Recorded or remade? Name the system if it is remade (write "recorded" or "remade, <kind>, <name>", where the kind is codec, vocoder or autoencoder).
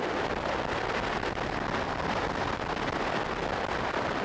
recorded